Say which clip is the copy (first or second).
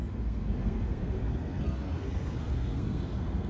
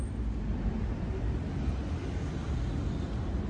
first